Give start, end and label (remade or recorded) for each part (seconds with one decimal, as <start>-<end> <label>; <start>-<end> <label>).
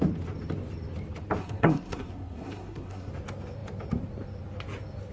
0.0-1.4 recorded; 1.4-3.1 remade; 3.1-5.1 recorded